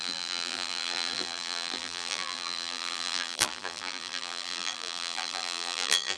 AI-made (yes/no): yes